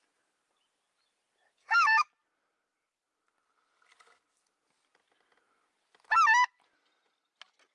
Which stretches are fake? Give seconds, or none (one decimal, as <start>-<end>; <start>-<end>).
1.6-2.1

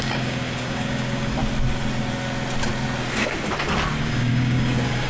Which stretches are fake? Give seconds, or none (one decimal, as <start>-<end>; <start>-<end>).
0.0-1.4; 4.0-5.1

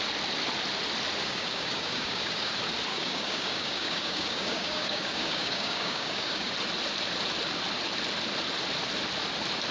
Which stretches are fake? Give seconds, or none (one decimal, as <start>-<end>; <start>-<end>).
1.2-2.5; 2.9-6.5

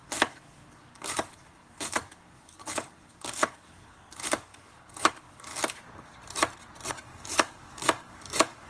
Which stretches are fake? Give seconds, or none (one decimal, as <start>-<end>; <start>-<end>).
0.0-5.5; 6.9-8.7

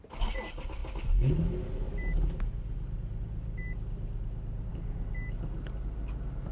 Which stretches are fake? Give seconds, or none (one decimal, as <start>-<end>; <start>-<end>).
none